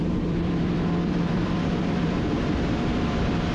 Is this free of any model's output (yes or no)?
no